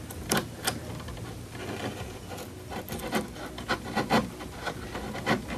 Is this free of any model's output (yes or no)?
yes